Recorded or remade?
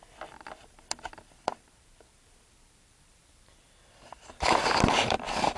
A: remade